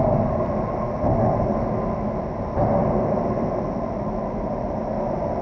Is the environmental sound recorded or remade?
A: recorded